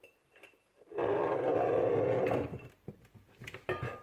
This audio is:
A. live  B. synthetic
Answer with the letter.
A